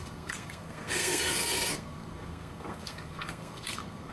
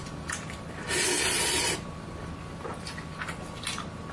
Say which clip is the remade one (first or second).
first